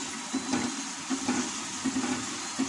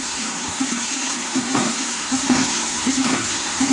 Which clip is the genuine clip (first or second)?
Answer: first